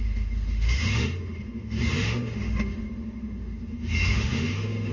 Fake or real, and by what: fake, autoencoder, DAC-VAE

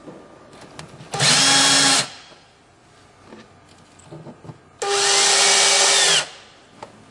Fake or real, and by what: real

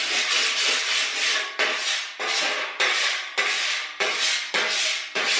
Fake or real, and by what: real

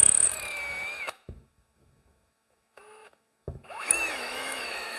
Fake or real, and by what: fake, autoencoder, DAC-VAE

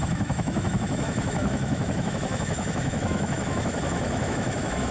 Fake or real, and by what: fake, autoencoder, DAC-VAE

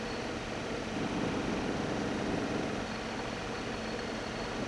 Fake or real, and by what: real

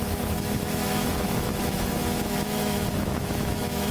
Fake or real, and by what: fake, autoencoder, DAC-VAE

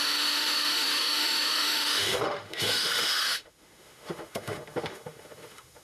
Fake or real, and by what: fake, autoencoder, DAC-VAE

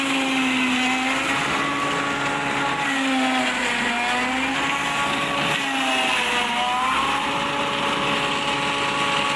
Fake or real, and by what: real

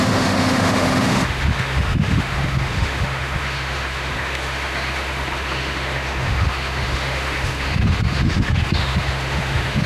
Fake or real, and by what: fake, autoencoder, DAC-VAE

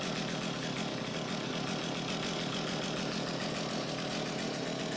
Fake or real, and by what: real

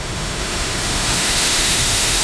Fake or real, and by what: fake, autoencoder, DAC-VAE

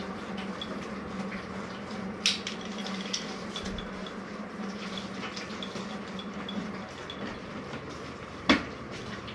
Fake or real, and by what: real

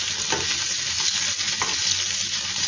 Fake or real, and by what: real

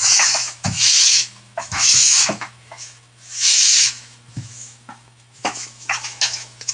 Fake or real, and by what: fake, autoencoder, DAC-VAE